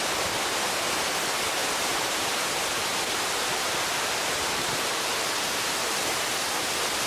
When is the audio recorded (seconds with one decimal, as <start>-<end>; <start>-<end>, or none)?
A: 0.0-1.6; 2.3-2.9; 6.2-7.1